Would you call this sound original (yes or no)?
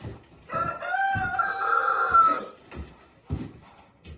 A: yes